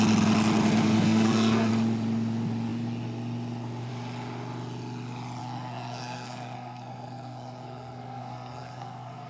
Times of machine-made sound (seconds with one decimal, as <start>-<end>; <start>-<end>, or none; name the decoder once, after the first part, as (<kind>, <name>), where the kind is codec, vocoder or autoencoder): 0.8-1.7 (codec, SNAC); 5.4-9.3